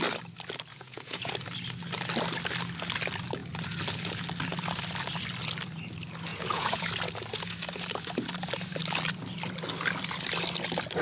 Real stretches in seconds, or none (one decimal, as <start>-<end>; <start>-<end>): 0.0-0.7; 1.3-6.3; 6.9-11.0